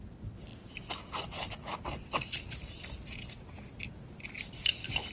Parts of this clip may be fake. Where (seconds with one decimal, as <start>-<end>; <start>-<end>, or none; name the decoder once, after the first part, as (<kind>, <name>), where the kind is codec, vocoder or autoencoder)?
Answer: none